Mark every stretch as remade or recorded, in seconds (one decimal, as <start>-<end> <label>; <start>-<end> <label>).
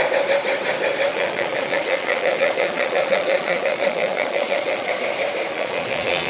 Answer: 0.0-1.1 recorded; 1.1-4.9 remade; 4.9-5.5 recorded; 5.5-6.3 remade